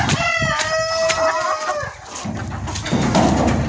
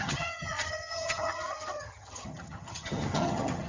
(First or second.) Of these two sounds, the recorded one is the first